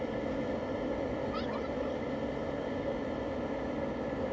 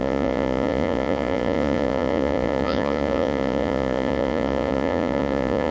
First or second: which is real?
first